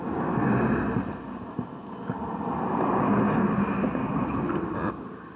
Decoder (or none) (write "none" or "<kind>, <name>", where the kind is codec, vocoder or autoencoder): none